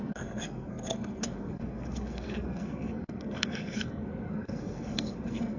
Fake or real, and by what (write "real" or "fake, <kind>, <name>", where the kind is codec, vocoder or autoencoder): fake, codec, SNAC